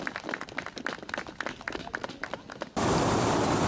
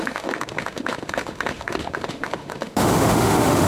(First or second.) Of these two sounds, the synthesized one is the second